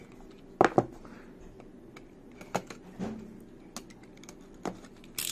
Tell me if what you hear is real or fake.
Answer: real